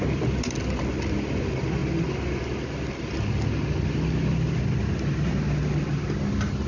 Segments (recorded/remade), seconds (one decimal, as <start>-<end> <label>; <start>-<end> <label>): 0.0-6.7 recorded